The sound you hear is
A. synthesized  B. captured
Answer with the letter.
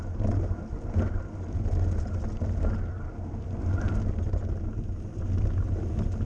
B